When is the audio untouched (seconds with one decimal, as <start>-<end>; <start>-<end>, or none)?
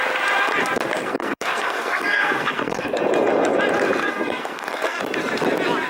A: 0.0-1.0; 3.0-4.0; 5.0-5.9